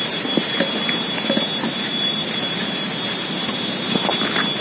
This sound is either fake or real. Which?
real